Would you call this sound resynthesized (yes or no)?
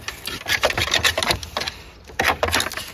no